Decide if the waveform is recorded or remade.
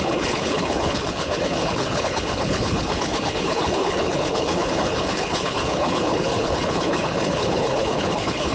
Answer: remade